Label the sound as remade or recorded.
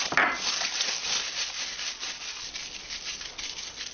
recorded